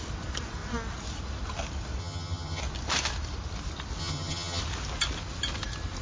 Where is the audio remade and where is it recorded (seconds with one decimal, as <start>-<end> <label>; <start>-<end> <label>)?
0.0-2.0 recorded; 2.0-2.6 remade; 2.6-4.0 recorded; 4.0-4.6 remade; 4.6-6.0 recorded